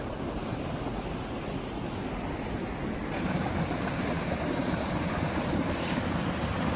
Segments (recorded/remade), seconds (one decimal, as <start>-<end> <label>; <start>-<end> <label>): 0.0-6.8 recorded